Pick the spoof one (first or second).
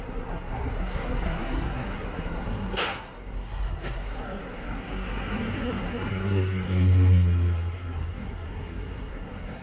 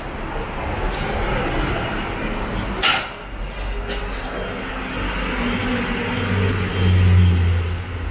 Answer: first